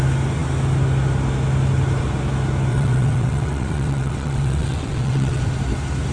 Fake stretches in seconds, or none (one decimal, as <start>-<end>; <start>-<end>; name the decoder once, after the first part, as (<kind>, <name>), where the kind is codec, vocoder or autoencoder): 2.7-5.4 (vocoder, WaveNeXt)